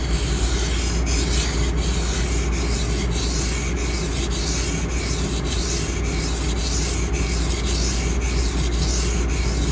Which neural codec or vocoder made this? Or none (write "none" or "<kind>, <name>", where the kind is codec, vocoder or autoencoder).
none